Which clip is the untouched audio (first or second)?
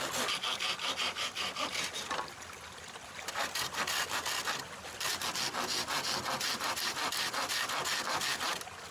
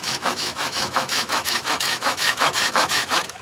first